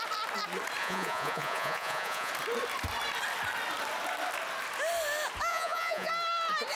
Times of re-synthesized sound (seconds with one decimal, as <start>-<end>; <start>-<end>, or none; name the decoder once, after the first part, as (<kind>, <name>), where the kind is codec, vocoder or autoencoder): 0.8-2.3 (vocoder, Vocos); 5.5-6.1